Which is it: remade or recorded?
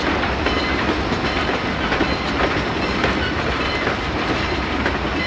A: recorded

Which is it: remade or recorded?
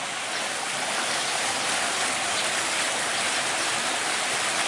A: recorded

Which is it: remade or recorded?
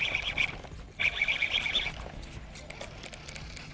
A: recorded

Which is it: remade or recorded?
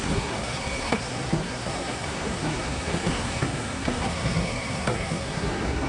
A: remade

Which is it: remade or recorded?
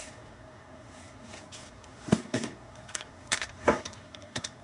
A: remade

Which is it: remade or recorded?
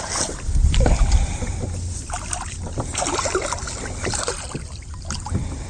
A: recorded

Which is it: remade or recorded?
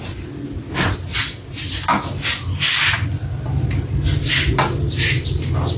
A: recorded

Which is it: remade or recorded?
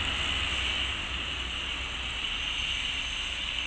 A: recorded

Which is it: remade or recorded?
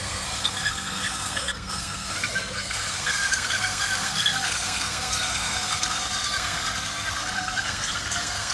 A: remade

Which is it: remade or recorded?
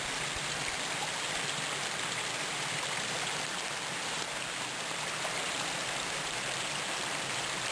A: recorded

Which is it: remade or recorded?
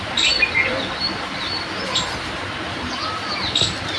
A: recorded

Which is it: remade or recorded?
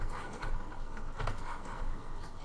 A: remade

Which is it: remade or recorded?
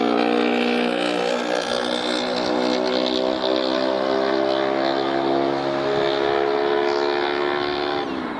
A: recorded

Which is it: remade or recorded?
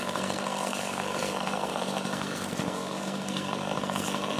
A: remade